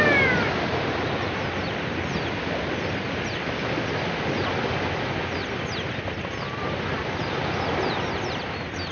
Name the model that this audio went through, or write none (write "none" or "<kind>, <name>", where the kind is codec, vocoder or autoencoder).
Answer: none